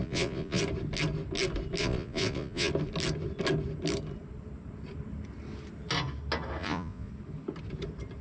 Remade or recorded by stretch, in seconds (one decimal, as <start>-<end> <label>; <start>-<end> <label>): 0.0-0.6 remade; 0.6-1.8 recorded; 1.8-2.7 remade; 2.7-6.6 recorded; 6.6-7.1 remade; 7.1-8.2 recorded